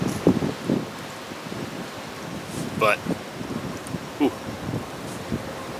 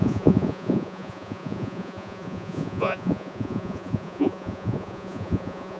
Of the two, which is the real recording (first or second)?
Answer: first